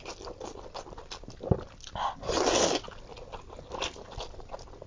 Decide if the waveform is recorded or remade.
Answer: recorded